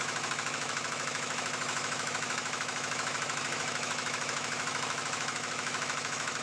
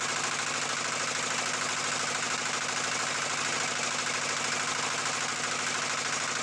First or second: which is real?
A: second